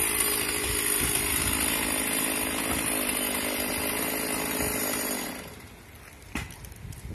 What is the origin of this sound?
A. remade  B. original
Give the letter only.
B